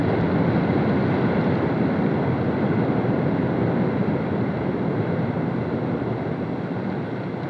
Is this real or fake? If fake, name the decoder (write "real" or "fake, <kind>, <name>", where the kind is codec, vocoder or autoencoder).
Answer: real